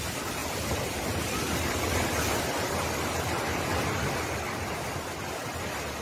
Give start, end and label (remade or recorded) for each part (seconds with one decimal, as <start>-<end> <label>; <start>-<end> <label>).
0.0-6.0 recorded